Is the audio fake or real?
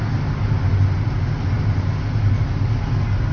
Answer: real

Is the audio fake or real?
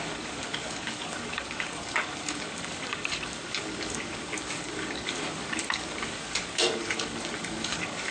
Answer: fake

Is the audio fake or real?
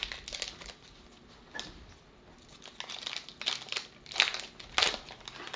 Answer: real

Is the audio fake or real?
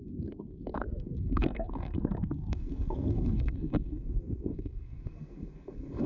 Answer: fake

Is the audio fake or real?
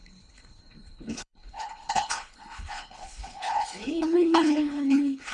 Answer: fake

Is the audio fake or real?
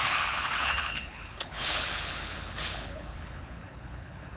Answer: fake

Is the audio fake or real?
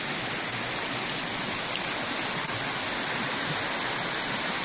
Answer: real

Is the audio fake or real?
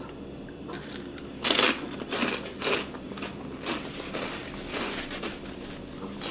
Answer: real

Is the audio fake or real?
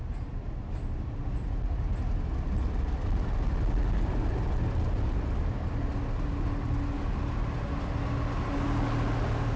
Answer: real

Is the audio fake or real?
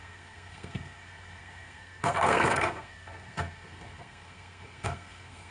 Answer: fake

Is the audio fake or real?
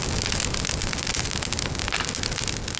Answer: real